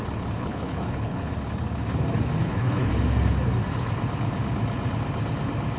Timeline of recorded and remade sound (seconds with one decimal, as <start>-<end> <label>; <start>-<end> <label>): 0.0-0.4 recorded; 0.4-1.3 remade; 1.3-2.4 recorded; 2.4-2.9 remade; 2.9-5.8 recorded